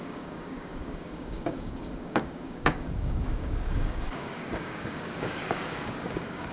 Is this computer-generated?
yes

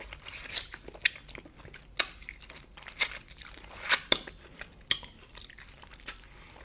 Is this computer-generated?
no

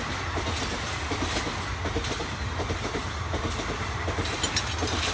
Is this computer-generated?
no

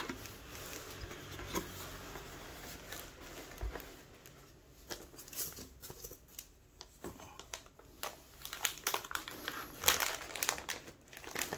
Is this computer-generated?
no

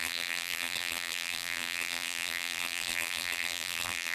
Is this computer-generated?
yes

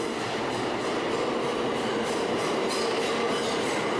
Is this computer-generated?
no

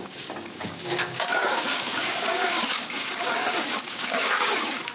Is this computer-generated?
yes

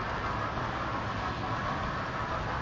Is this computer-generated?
no